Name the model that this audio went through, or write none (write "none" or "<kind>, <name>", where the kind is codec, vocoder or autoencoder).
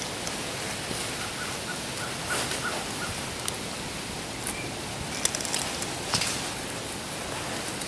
none